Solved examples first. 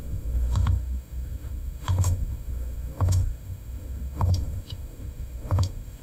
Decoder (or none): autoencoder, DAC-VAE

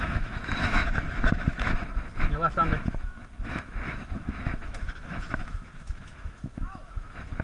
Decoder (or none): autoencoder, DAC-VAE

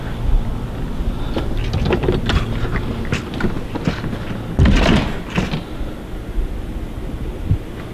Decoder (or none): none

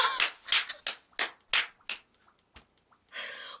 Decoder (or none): none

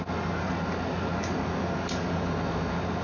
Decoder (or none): none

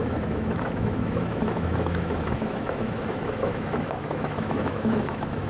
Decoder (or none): autoencoder, DAC-VAE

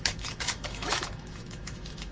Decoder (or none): autoencoder, DAC-VAE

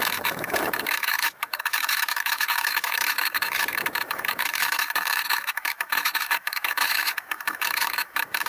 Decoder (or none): autoencoder, DAC-VAE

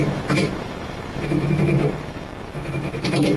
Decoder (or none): autoencoder, DAC-VAE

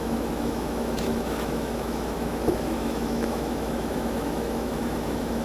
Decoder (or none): autoencoder, DAC-VAE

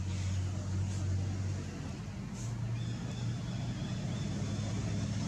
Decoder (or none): none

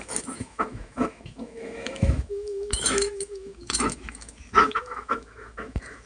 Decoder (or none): autoencoder, DAC-VAE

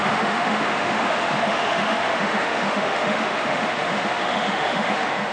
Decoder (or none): autoencoder, DAC-VAE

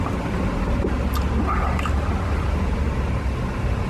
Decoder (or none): none